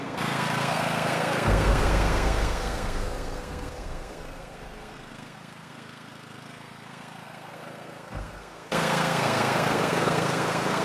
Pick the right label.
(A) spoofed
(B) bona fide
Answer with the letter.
A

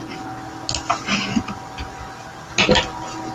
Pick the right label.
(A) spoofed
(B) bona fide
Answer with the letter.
B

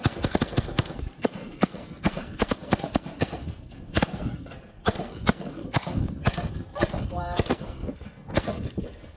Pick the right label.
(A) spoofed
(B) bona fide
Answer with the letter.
A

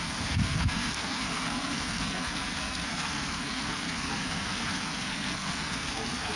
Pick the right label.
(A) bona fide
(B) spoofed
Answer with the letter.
B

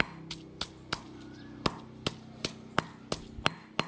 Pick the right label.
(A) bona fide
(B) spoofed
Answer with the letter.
A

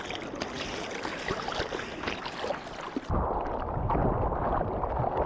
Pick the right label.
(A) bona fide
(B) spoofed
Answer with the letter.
A